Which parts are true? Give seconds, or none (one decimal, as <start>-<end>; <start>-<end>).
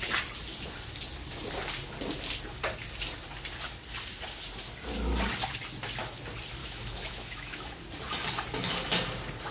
0.0-6.6; 7.8-9.5